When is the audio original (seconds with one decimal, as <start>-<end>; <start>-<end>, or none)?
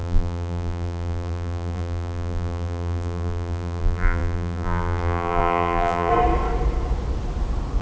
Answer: 6.1-7.8